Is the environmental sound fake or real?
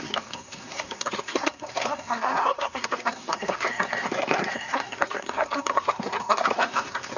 fake